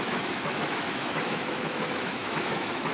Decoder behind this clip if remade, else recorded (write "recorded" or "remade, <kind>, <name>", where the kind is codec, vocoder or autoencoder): remade, autoencoder, DAC-VAE